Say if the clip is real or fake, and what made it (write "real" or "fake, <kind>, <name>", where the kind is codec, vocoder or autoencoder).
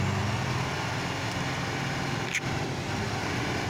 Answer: real